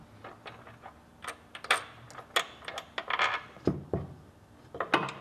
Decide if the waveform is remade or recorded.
recorded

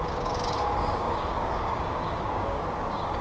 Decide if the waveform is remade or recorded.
remade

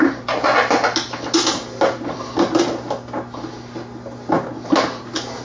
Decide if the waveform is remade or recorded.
recorded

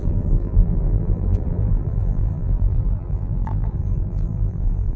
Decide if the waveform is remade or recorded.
remade